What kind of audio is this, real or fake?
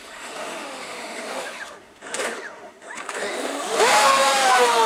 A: fake